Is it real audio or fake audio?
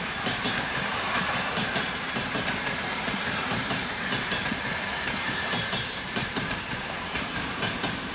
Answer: fake